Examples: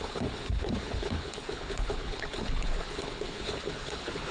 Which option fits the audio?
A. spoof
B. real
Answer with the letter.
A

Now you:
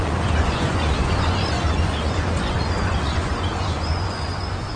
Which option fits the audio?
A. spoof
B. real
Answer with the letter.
A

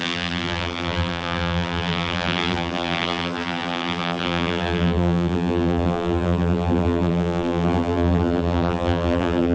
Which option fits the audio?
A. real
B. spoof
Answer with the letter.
B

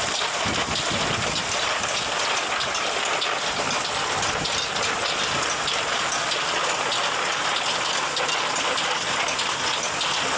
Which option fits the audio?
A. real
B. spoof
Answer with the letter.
A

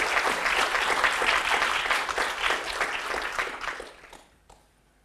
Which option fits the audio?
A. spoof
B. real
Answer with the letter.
B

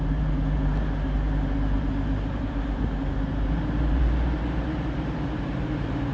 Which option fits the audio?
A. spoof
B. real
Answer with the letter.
A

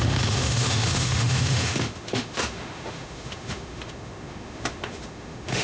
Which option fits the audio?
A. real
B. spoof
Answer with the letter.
B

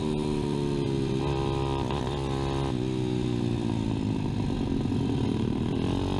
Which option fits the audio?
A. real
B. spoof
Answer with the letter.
A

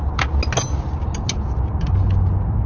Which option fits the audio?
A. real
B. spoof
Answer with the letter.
A